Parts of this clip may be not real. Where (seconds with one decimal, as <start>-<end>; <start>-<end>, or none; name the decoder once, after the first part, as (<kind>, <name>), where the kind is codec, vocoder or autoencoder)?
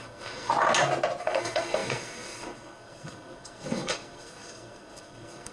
0.0-0.5 (codec, SNAC); 1.2-5.5